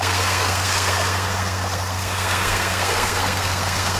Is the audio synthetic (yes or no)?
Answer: yes